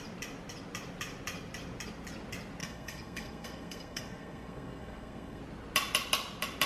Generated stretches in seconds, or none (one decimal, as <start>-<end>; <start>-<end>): 2.6-5.4